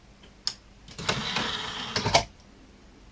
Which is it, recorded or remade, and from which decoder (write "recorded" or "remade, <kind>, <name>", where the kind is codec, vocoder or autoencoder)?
recorded